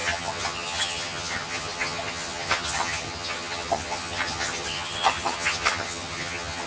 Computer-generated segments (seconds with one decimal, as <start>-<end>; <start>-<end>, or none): 0.0-6.7